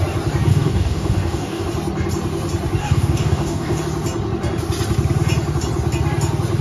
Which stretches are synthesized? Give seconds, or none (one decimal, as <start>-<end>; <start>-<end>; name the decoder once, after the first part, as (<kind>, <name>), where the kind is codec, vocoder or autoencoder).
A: 0.5-1.6 (codec, DAC); 2.8-3.8